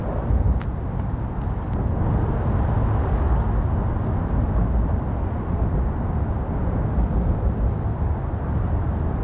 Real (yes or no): yes